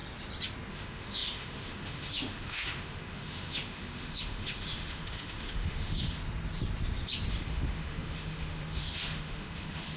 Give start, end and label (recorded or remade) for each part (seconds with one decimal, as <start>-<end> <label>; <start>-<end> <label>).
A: 0.0-0.7 recorded; 0.7-6.2 remade; 6.2-7.3 recorded; 7.3-10.0 remade